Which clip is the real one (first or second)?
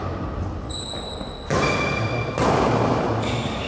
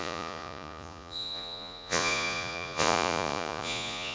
first